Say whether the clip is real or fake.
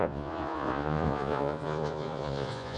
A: fake